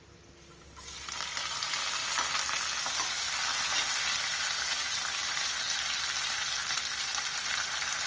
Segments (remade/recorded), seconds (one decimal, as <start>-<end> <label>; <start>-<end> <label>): 0.0-8.1 recorded